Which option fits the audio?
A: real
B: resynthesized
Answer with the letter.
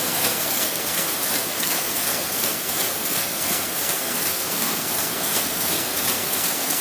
B